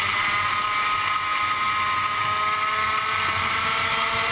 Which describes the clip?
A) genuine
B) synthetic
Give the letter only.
A